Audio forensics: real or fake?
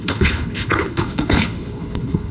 fake